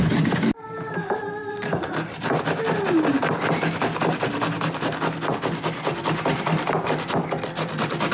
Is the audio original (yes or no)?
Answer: yes